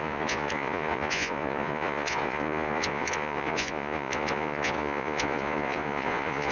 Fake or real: fake